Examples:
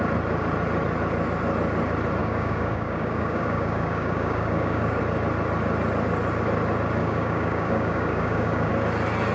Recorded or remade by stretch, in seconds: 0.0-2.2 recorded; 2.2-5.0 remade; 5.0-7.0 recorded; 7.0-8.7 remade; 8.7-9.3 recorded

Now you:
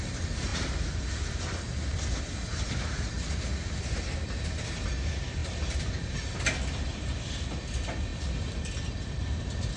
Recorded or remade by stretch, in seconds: 0.0-9.8 recorded

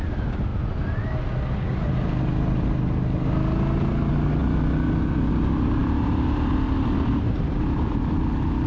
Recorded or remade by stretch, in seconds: 0.0-8.7 recorded

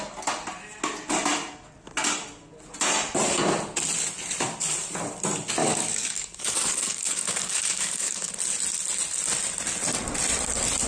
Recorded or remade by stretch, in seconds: 0.0-5.6 recorded; 5.6-8.3 remade; 8.3-10.9 recorded